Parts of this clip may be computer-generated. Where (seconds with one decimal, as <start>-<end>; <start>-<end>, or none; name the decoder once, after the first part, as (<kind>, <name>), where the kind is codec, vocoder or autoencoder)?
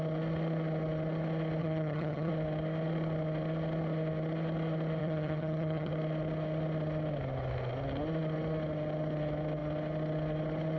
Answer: 1.6-2.3 (vocoder, HiFi-GAN); 5.0-5.9